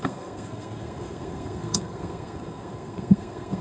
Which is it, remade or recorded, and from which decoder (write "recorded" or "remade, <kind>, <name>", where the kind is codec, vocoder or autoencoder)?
remade, codec, SNAC